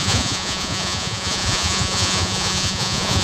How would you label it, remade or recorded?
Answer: remade